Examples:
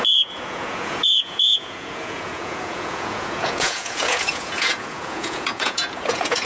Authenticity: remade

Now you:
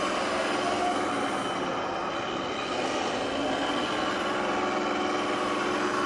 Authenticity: recorded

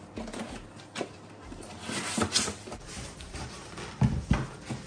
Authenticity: recorded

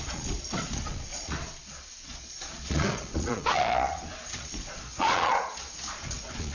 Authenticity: remade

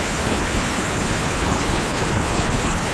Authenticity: remade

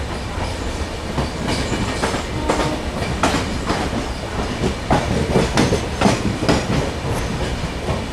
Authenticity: recorded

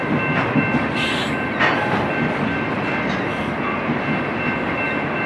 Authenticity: recorded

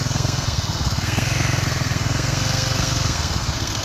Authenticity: remade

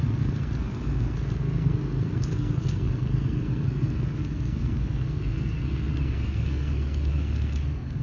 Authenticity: remade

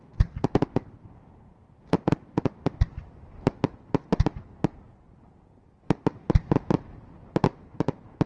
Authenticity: recorded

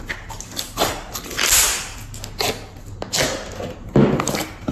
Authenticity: recorded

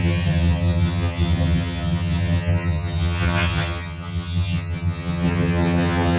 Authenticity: remade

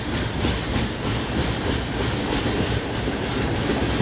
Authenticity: recorded